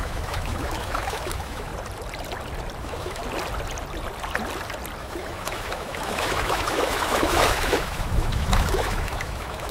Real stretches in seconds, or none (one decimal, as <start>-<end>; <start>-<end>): 1.7-2.8; 3.2-5.0